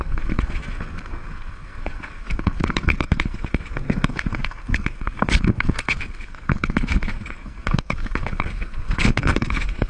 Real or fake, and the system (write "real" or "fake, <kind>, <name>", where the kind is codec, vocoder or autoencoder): fake, codec, SNAC